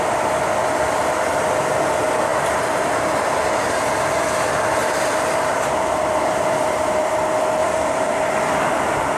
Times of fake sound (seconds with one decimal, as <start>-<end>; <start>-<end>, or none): 2.3-2.9; 4.8-7.1; 7.6-8.1